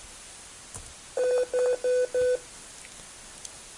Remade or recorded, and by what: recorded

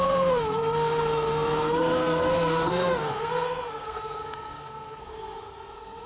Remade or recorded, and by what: remade, codec, SNAC